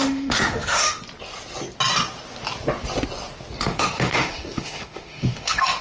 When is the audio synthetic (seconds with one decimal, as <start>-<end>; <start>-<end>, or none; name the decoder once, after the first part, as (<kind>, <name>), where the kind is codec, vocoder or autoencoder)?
0.0-1.0 (autoencoder, DAC-VAE); 3.6-5.8